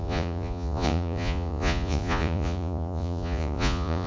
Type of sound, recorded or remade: remade